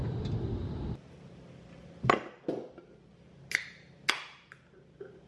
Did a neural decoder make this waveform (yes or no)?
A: no